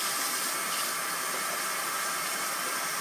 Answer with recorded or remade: recorded